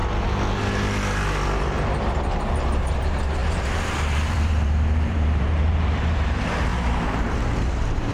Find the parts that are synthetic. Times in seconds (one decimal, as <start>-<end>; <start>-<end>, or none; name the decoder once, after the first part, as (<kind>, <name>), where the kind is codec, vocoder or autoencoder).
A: 2.1-8.1 (vocoder, BigVGAN v2)